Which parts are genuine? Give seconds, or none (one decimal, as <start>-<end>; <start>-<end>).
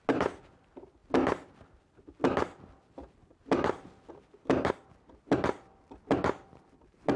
0.0-7.2